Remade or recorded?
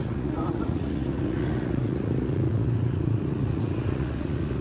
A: remade